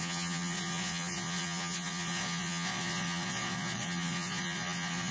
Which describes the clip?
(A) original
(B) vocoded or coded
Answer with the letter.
B